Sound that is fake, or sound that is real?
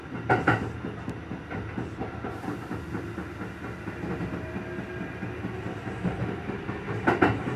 real